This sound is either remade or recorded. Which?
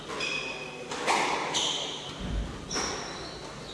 recorded